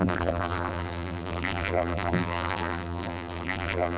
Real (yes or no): no